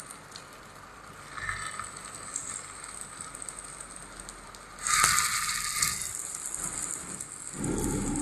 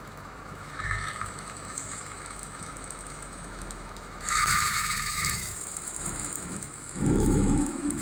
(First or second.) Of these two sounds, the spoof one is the second